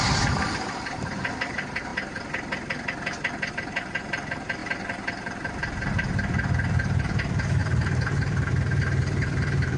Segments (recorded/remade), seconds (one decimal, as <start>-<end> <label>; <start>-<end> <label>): 0.0-1.9 remade; 1.9-3.5 recorded; 3.5-9.8 remade